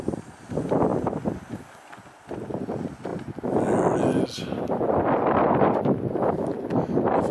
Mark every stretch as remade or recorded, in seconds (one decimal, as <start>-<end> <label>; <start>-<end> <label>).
0.0-7.3 recorded